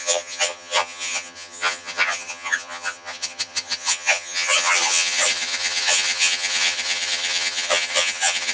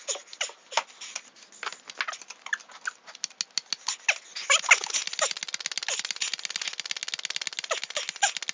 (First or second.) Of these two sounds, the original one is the second